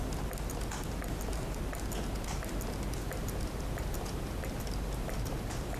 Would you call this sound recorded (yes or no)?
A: yes